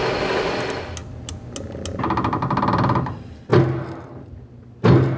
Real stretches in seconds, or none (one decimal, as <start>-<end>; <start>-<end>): 0.0-5.2